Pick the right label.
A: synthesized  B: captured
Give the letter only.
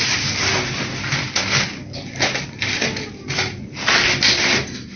B